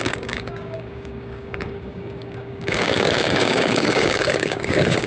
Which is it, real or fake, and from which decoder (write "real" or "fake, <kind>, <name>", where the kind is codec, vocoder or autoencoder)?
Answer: fake, codec, DAC